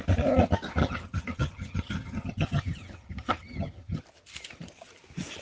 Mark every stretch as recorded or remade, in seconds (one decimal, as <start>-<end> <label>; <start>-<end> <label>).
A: 0.0-0.8 recorded; 0.8-4.0 remade; 4.0-5.4 recorded